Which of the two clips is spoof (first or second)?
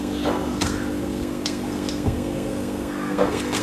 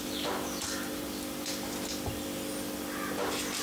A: first